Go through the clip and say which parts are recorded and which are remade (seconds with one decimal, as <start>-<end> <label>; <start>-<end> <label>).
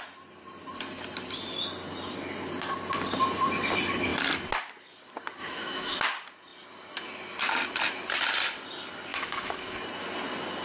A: 0.0-5.4 recorded; 5.4-6.0 remade; 6.0-9.1 recorded; 9.1-9.8 remade; 9.8-10.6 recorded